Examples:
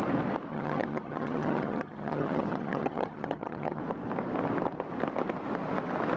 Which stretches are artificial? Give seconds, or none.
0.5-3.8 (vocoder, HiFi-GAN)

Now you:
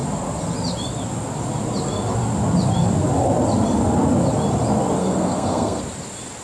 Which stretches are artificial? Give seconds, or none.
5.0-5.8 (codec, SNAC)

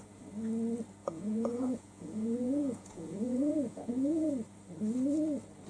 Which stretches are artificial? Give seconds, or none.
1.0-4.3 (vocoder, Vocos)